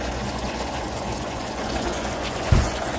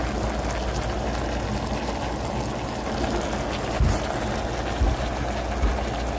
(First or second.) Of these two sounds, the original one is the second